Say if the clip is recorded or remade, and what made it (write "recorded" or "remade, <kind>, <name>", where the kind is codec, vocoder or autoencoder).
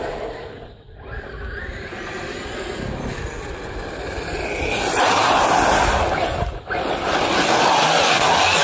recorded